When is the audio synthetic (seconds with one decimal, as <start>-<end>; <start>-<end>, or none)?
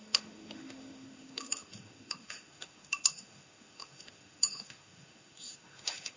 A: 0.0-6.2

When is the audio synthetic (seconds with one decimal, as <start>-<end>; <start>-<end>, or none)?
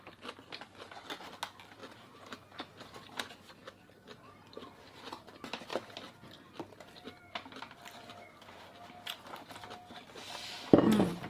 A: 1.8-3.2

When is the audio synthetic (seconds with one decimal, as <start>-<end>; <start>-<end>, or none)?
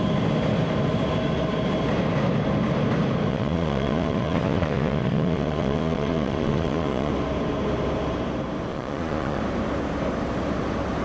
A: 3.3-7.1; 8.7-9.4